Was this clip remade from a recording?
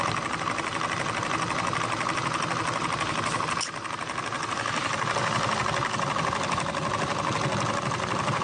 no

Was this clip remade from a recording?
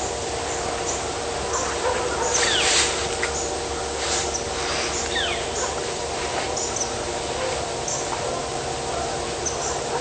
no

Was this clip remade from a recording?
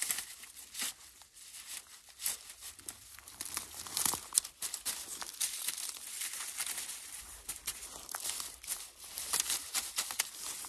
no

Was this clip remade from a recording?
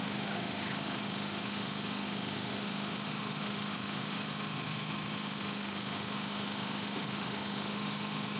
yes